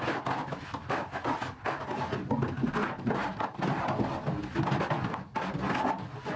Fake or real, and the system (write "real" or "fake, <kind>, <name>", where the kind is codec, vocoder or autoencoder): real